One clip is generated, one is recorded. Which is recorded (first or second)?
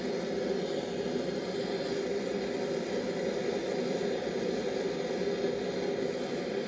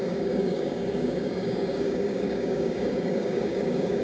first